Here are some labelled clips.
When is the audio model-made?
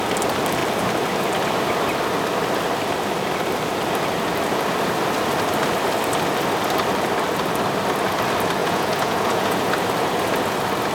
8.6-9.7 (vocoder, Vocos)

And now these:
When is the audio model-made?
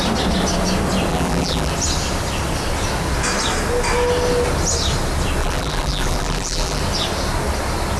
1.1-1.7 (vocoder, BigVGAN v2); 5.4-6.8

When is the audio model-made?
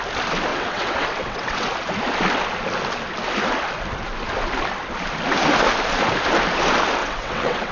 0.5-1.7 (vocoder, WaveNeXt); 7.0-7.7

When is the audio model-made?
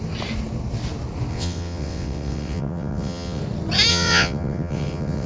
1.3-3.4 (vocoder, WaveNeXt); 3.9-5.3